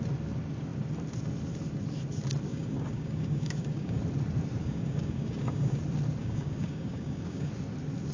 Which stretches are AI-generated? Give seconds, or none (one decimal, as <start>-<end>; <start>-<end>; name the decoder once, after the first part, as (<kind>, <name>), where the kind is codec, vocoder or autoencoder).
2.5-4.0 (codec, DAC); 4.6-5.8; 6.2-7.5